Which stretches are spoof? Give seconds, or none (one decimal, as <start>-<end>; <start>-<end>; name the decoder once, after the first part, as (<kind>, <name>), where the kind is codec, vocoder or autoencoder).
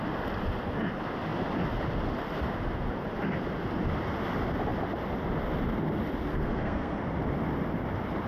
6.3-7.0 (codec, SNAC)